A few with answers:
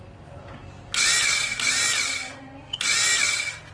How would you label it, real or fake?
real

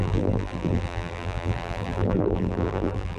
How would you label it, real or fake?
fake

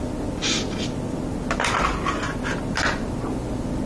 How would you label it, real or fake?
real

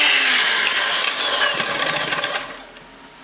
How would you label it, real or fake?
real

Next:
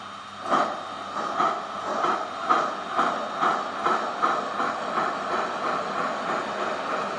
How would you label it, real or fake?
real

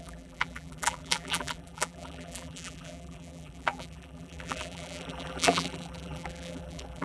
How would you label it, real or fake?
fake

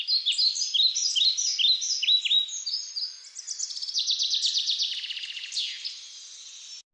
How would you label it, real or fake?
real